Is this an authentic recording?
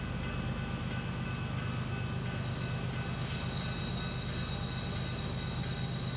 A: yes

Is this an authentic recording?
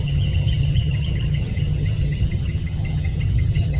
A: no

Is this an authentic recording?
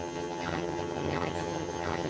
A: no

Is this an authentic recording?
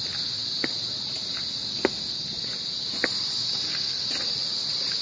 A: yes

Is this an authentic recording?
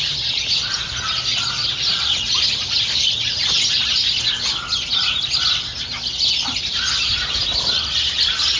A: yes